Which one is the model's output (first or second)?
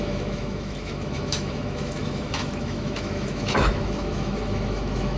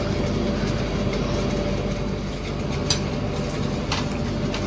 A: first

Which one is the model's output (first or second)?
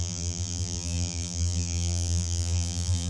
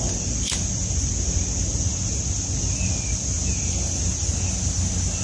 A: first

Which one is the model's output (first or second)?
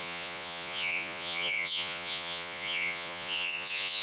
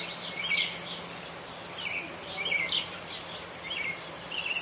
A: first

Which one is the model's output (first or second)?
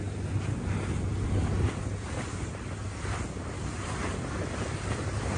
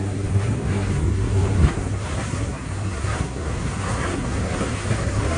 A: second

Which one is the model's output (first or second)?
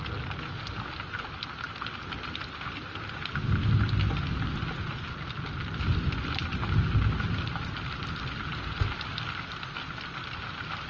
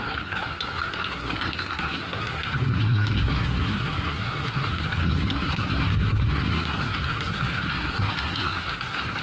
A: second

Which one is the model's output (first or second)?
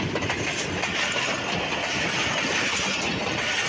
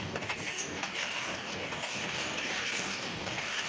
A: second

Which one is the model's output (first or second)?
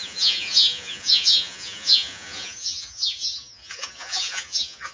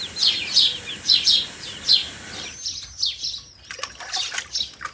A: first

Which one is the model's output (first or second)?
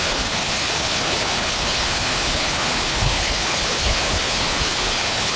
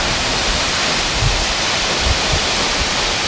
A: first